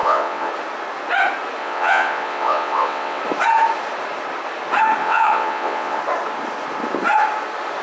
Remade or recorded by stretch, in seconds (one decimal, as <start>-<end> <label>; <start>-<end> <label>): 0.0-0.5 remade; 0.5-1.6 recorded; 1.6-3.2 remade; 3.2-5.0 recorded; 5.0-6.0 remade; 6.0-7.8 recorded

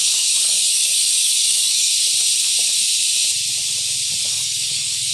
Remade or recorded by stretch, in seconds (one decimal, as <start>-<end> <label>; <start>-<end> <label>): 0.0-1.9 remade; 1.9-4.2 recorded; 4.2-5.1 remade

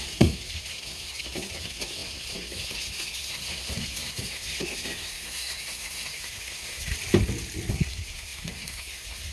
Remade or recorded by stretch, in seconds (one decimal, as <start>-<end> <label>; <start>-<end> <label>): 0.0-6.9 remade; 6.9-7.7 recorded; 7.7-9.3 remade

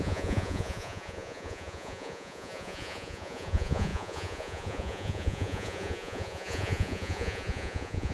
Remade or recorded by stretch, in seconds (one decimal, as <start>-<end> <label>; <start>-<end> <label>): 0.0-8.1 remade

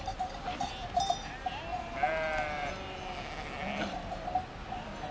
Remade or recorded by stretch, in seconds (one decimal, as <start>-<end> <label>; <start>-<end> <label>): 0.0-5.1 recorded

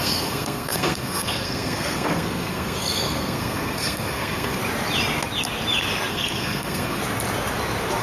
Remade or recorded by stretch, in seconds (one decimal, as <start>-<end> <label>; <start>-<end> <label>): 0.0-4.6 remade; 4.6-6.1 recorded; 6.1-7.0 remade; 7.0-8.0 recorded

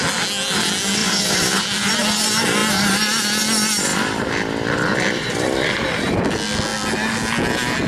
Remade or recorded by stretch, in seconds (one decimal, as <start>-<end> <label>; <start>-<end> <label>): 0.0-1.0 recorded; 1.0-1.9 remade; 1.9-3.9 recorded; 3.9-5.7 remade; 5.7-7.9 recorded